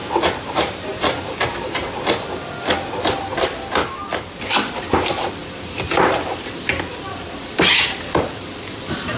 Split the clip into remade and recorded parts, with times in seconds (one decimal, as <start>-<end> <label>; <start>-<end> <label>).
0.0-1.0 remade; 1.0-3.8 recorded; 3.8-4.4 remade; 4.4-9.2 recorded